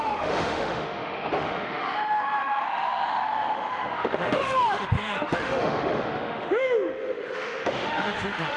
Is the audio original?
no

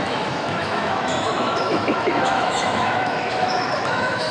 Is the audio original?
no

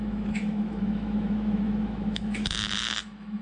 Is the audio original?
no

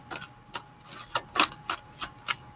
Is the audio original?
yes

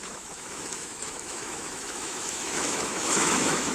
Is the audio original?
no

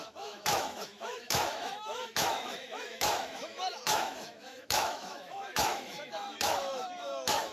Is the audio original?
no